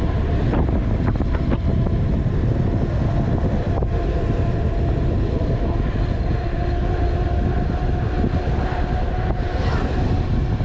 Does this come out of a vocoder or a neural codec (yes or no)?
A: no